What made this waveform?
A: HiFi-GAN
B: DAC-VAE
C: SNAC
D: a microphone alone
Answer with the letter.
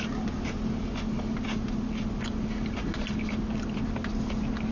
D